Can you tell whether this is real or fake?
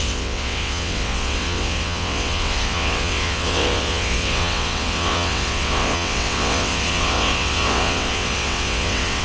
fake